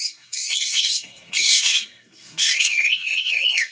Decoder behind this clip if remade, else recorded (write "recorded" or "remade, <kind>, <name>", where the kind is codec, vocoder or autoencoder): remade, codec, SNAC